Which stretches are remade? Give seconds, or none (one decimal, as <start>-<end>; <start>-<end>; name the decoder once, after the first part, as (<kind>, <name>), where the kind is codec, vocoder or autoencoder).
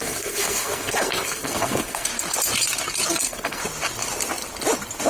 0.0-2.1 (codec, SNAC); 3.1-3.6